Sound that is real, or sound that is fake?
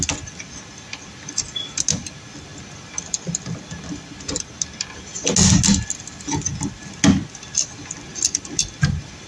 real